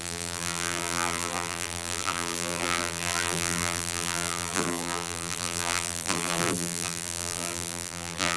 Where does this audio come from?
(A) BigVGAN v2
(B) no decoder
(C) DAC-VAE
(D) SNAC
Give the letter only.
A